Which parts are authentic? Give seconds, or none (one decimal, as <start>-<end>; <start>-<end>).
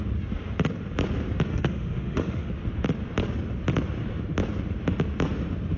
0.0-1.5; 2.5-5.8